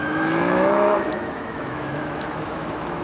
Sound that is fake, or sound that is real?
fake